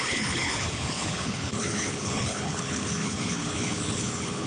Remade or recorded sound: remade